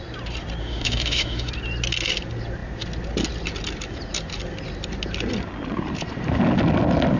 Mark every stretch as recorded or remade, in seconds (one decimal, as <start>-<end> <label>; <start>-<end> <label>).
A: 0.0-0.6 recorded; 0.6-1.5 remade; 1.5-7.2 recorded